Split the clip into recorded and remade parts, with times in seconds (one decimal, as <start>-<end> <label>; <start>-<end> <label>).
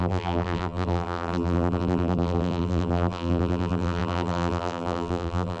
0.0-5.6 remade